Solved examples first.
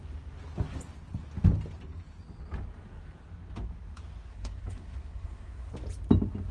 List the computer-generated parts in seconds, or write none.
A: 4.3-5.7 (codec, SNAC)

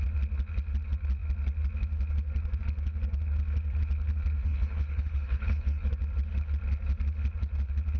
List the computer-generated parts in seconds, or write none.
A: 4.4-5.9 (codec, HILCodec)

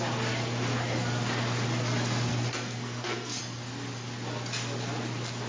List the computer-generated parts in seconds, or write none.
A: 2.3-3.4 (codec, SNAC)